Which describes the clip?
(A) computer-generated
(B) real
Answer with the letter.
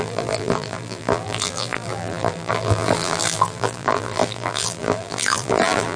A